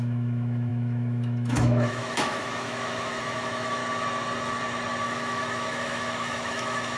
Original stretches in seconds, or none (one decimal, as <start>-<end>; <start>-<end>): 3.8-5.0